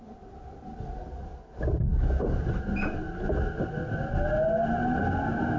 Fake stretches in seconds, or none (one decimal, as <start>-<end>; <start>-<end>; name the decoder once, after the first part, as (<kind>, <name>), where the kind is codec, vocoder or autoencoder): none

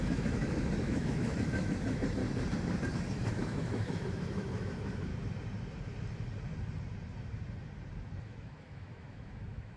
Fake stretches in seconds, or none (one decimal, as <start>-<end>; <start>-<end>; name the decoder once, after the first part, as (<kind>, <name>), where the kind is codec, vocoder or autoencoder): 0.0-2.2 (autoencoder, DAC-VAE); 2.9-5.1; 8.2-9.8